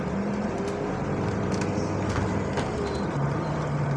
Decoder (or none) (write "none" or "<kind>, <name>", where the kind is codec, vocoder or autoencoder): none